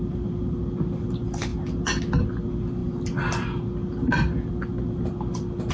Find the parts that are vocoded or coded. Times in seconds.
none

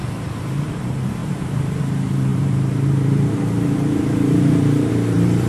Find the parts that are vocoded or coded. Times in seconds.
0.0-5.5 (vocoder, BigVGAN v2)

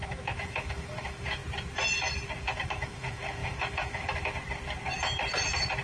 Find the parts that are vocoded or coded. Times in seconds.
0.0-1.4 (autoencoder, DAC-VAE); 2.4-4.3

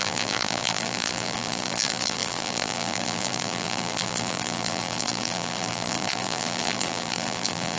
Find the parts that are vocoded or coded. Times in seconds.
0.0-7.8 (vocoder, BigVGAN v2)

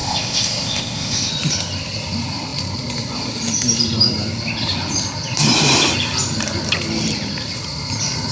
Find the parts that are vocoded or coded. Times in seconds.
0.0-1.3 (codec, ZipCodec)

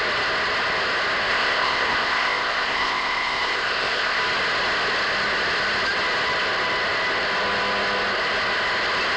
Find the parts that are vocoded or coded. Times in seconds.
1.3-4.2 (codec, ZipCodec)

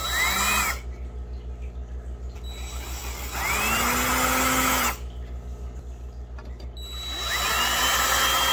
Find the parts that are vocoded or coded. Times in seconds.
none